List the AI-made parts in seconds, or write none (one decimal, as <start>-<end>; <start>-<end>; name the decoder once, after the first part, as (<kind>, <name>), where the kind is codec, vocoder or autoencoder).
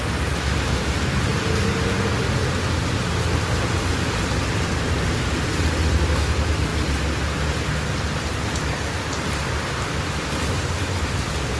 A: none